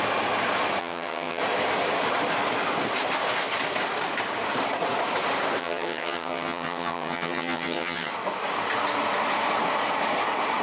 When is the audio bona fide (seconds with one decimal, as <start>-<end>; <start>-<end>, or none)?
0.0-0.8; 1.4-5.6; 8.1-10.6

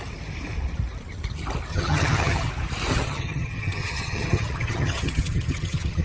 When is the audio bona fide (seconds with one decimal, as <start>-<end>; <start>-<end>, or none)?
0.0-1.7; 2.5-2.9

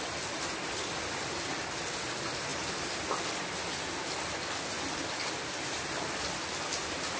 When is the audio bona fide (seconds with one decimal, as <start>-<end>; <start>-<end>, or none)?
0.0-7.2

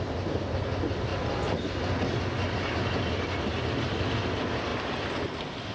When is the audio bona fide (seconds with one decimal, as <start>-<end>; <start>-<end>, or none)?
0.0-5.7

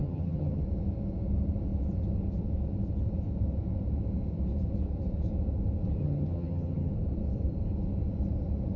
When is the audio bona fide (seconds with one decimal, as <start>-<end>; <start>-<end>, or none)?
0.6-6.0; 6.9-8.8

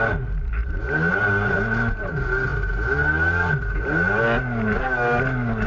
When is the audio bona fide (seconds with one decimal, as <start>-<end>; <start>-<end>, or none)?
0.0-5.7